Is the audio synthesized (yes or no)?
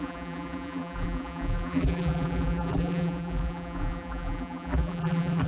yes